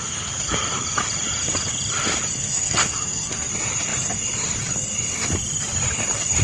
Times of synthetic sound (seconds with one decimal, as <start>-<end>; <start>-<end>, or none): 2.4-3.5